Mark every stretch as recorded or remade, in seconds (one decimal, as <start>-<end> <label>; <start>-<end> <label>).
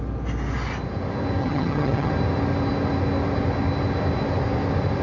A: 0.0-1.4 recorded; 1.4-2.1 remade; 2.1-5.0 recorded